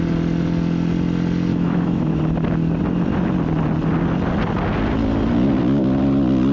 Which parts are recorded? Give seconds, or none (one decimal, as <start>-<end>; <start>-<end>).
0.0-1.5; 2.2-6.5